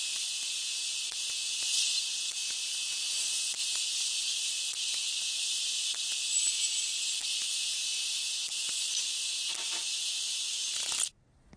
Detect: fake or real real